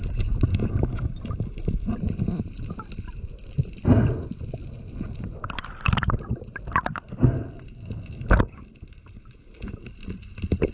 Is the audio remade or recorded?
recorded